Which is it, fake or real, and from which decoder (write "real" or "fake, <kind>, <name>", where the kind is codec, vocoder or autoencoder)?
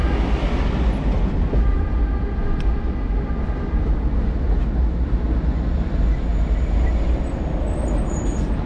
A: real